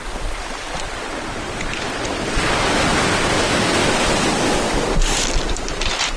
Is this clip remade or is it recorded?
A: remade